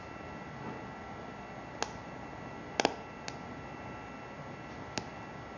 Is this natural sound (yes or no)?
yes